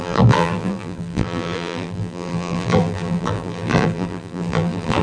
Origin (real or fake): fake